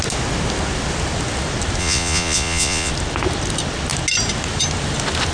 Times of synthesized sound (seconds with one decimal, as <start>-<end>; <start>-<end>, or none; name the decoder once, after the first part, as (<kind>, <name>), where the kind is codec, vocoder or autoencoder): 1.8-2.9 (vocoder, Vocos)